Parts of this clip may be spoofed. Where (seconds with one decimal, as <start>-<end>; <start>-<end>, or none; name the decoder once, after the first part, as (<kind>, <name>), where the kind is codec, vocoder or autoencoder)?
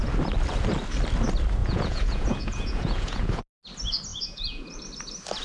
1.6-3.4 (vocoder, Vocos); 4.1-4.8